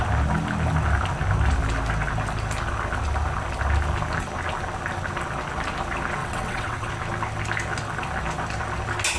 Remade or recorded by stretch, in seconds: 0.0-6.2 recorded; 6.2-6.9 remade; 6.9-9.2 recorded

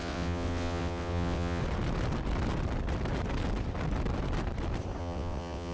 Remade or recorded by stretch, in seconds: 0.0-1.6 remade; 1.6-5.0 recorded; 5.0-5.7 remade